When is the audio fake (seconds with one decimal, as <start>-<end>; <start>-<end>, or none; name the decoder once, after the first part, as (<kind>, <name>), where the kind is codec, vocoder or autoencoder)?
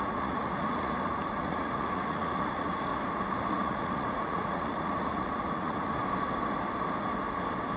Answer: 0.0-2.9 (vocoder, Vocos); 3.5-6.0